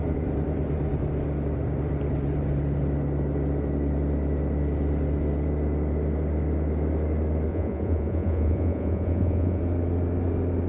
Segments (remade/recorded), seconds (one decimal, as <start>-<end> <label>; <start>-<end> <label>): 0.0-7.5 recorded; 7.5-9.6 remade; 9.6-10.7 recorded